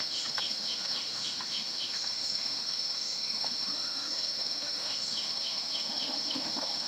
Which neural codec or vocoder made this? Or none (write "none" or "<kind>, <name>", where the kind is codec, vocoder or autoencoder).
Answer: autoencoder, DAC-VAE